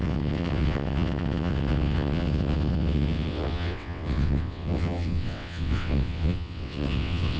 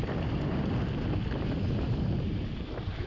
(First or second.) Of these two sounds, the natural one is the second